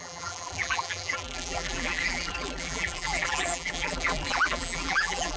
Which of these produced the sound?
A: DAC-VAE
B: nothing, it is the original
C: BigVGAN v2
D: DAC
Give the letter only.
C